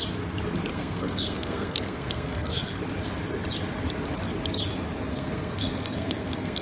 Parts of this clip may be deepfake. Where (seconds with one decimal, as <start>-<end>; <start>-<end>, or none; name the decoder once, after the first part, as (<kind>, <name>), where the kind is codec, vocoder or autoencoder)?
0.7-2.8 (codec, SNAC); 5.1-6.6